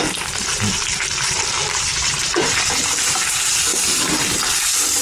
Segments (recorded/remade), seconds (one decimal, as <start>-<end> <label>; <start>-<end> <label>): 0.0-5.0 remade